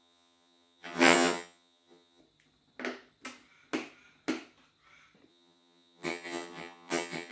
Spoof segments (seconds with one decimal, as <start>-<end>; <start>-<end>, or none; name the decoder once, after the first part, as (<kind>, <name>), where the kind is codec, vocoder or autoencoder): 0.0-2.2 (vocoder, HiFi-GAN); 5.3-7.3